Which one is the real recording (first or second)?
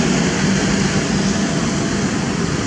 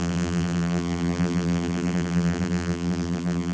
first